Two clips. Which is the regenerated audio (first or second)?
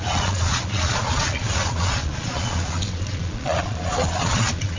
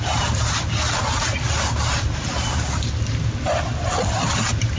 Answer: first